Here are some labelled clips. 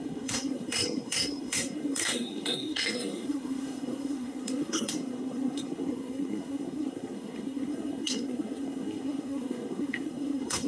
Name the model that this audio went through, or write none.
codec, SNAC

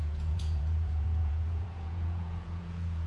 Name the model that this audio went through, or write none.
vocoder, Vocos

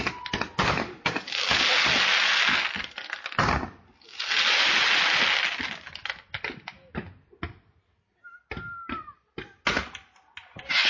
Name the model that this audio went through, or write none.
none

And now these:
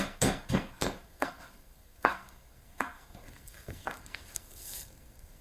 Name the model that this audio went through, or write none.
codec, SNAC